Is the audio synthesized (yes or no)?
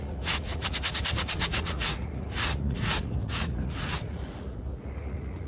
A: yes